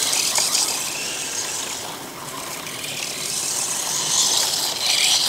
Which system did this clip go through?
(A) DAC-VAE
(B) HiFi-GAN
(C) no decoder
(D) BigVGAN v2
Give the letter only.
C